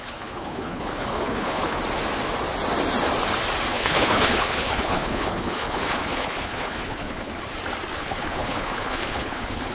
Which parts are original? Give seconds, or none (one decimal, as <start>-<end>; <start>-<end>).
1.8-3.7; 7.3-7.9